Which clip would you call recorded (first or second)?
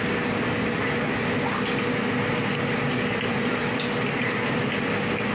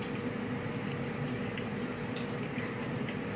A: first